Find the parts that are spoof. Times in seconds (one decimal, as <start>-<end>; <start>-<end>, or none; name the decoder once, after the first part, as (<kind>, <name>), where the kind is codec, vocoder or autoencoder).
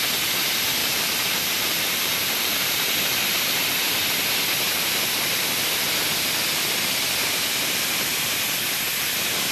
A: 0.8-2.9 (vocoder, BigVGAN v2)